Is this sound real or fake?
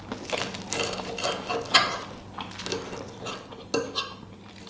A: real